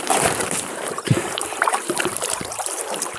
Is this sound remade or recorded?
remade